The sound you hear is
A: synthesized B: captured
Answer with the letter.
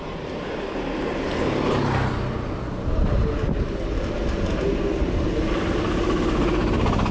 B